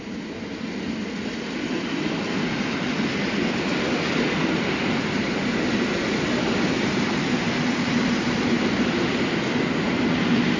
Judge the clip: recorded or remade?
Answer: recorded